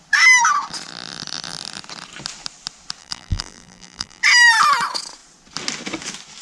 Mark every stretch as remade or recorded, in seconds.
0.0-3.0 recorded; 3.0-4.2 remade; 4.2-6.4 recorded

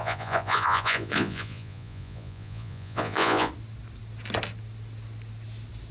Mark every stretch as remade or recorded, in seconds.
0.0-3.5 remade; 3.5-5.9 recorded